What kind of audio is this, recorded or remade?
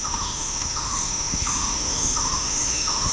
remade